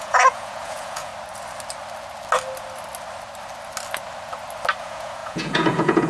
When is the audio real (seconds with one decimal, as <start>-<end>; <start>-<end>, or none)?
1.1-4.8